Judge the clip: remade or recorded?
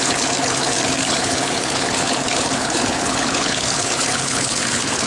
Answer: remade